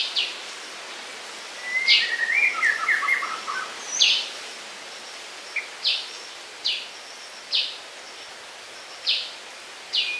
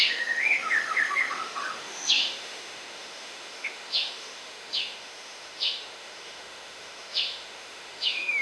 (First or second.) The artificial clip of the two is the second